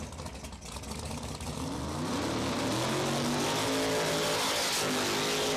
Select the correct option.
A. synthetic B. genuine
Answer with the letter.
B